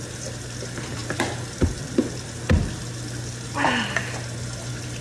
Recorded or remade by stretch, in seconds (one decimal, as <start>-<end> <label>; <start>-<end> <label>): 0.0-5.0 recorded